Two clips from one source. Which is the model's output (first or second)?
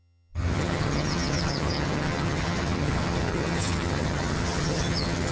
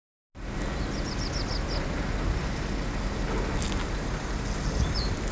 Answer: first